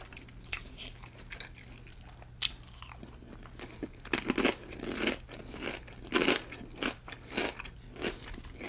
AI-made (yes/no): no